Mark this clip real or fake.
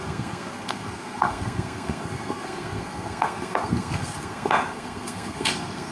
fake